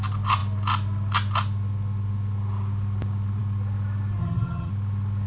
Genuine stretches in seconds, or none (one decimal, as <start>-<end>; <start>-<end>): 0.0-4.2; 4.7-5.3